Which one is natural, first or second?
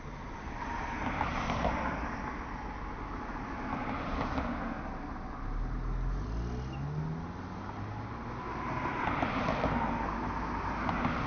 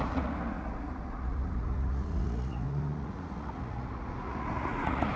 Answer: first